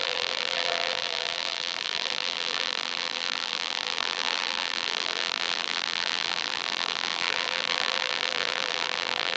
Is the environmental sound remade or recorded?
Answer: remade